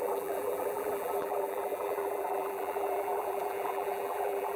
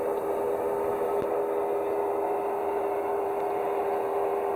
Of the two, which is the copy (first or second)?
first